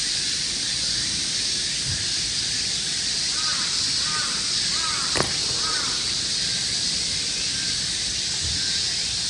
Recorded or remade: recorded